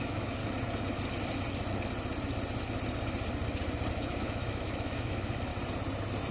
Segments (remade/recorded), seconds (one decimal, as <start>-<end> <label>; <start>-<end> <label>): 0.0-0.4 remade; 0.4-3.9 recorded; 3.9-5.5 remade; 5.5-6.3 recorded